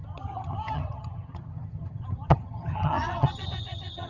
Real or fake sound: fake